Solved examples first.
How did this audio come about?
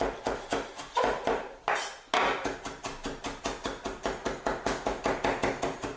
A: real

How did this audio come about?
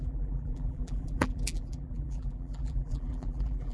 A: fake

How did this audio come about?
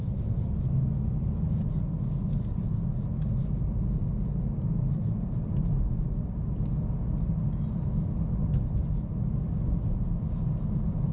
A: real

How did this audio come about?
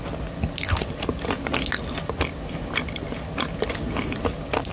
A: real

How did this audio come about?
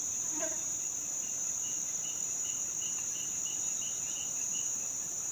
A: fake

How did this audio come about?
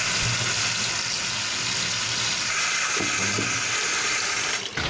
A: real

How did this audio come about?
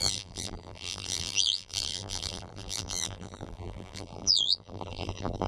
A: fake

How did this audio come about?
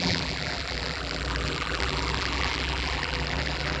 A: fake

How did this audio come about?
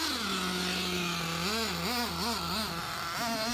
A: real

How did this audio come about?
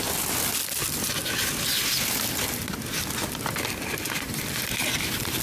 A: real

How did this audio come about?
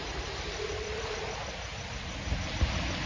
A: real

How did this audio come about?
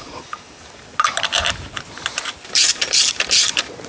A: fake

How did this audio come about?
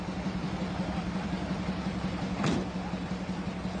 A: fake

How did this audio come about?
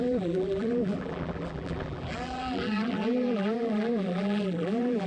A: fake